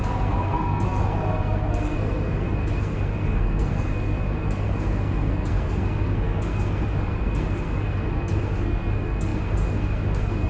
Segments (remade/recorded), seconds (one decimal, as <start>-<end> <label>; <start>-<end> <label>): 0.0-10.5 remade